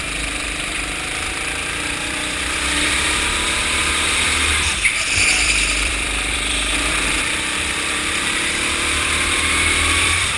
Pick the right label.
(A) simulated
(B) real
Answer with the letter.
A